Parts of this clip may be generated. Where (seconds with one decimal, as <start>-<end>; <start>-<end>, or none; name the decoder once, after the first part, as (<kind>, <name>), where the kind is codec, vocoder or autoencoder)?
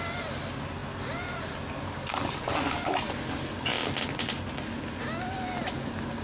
none